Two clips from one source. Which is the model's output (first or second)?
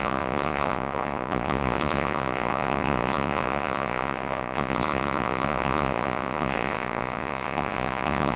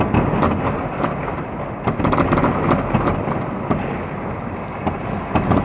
first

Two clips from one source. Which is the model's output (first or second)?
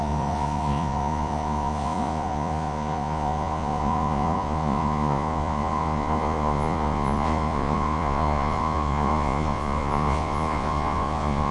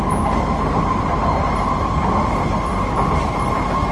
first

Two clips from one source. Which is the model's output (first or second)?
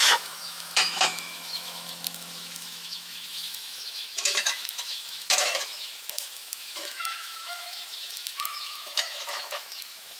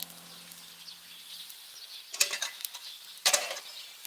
first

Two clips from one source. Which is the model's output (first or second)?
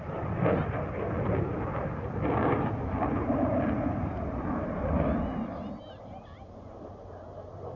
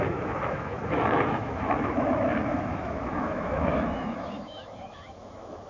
second